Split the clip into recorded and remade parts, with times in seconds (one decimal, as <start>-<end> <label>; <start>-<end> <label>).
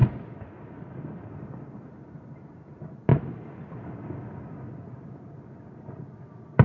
0.0-6.6 recorded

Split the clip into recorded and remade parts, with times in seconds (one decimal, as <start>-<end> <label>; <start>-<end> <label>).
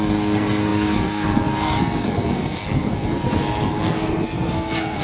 0.0-5.0 remade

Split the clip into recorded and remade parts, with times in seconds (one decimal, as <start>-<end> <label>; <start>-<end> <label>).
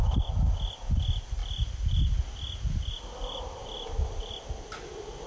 0.0-5.3 recorded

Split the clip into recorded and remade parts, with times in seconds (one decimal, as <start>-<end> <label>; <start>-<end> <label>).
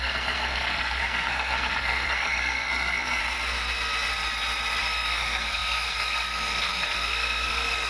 0.0-3.2 remade; 3.2-4.8 recorded; 4.8-7.9 remade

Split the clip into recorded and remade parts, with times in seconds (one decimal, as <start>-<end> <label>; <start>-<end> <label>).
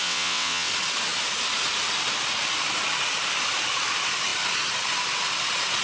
0.0-0.7 remade; 0.7-5.8 recorded